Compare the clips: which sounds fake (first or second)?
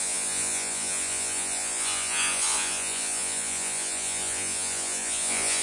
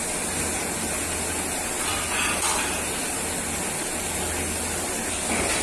first